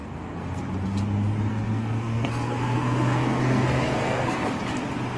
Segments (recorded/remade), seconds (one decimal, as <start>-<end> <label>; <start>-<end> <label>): 0.0-0.6 remade; 0.6-1.5 recorded; 1.5-4.5 remade; 4.5-5.2 recorded